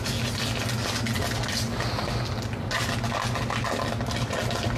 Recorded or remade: recorded